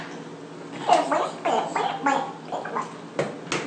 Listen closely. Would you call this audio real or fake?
real